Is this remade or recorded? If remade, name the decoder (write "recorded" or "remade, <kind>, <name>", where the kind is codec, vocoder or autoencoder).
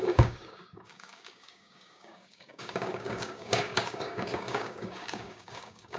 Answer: remade, codec, DAC